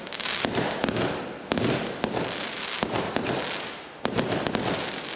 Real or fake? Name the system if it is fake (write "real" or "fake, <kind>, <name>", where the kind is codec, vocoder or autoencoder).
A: real